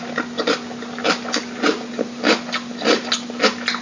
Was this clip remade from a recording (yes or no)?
no